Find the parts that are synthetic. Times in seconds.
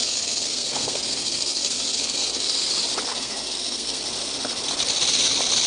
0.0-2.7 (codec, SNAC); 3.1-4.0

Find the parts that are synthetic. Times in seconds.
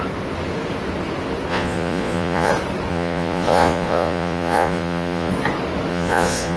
1.5-2.5 (vocoder, Vocos); 2.9-5.3; 5.9-6.6